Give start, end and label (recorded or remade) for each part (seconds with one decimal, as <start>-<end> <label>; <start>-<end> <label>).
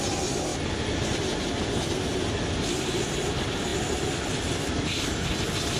0.0-5.8 recorded